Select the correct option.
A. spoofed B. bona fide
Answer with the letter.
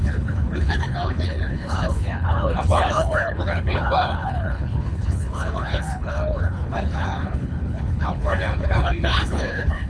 A